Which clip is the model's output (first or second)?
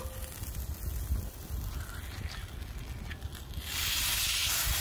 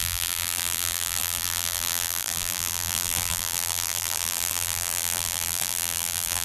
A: second